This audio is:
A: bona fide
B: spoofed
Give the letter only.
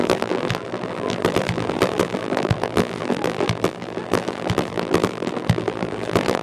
B